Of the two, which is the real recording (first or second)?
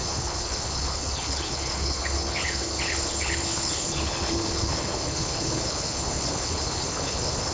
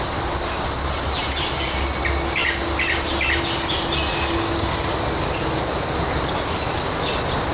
second